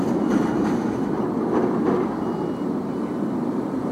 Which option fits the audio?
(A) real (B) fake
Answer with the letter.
A